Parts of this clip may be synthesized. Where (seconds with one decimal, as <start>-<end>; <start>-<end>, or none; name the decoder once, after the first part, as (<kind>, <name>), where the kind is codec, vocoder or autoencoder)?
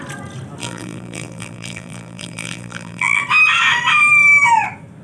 0.6-3.2 (vocoder, BigVGAN v2)